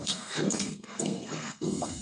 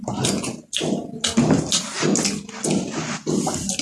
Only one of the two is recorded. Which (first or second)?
second